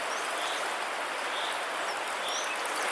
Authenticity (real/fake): real